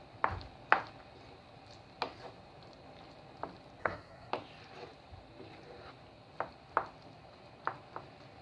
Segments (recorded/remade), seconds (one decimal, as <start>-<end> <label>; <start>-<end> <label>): 0.0-3.8 recorded; 3.8-4.3 remade; 4.3-8.4 recorded